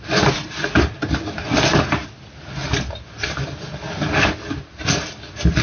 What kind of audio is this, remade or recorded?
recorded